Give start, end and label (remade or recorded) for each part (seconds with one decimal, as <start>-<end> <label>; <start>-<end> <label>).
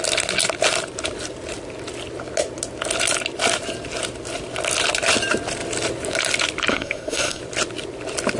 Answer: 0.0-6.7 recorded; 6.7-7.4 remade; 7.4-8.4 recorded